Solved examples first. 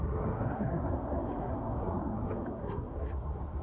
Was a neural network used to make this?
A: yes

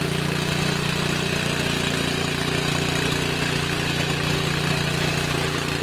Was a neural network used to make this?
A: no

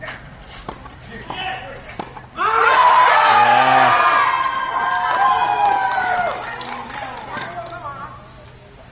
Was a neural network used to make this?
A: no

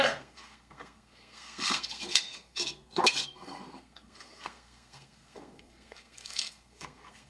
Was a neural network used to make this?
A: yes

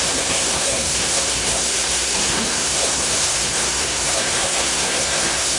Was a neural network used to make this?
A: yes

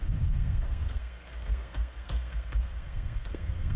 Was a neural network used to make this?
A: yes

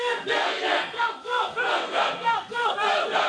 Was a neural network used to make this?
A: yes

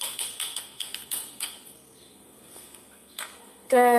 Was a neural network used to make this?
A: yes